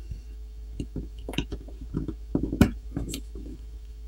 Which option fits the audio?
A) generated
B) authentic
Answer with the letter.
A